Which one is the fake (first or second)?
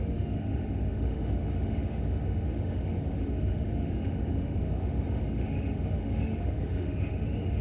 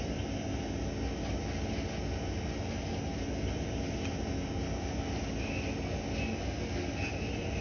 first